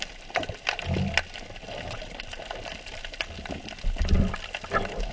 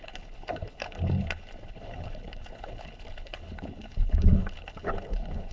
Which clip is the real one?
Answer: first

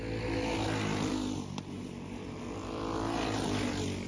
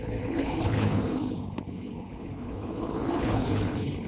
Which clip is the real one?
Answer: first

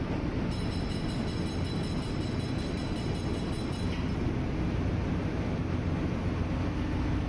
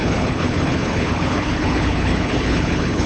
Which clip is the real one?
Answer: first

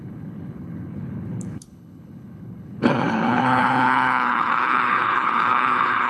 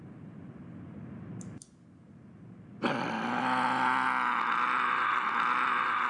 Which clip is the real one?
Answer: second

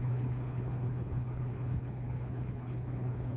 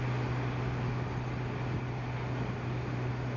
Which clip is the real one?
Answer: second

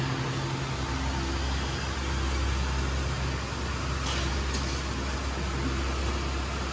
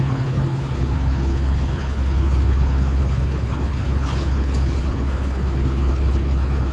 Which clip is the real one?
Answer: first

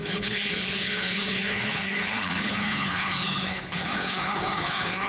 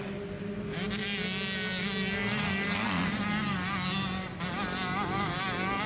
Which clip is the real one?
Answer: second